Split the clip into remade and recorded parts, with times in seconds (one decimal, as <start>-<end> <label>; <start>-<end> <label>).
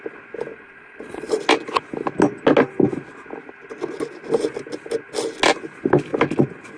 0.0-0.5 recorded; 0.5-1.4 remade; 1.4-6.8 recorded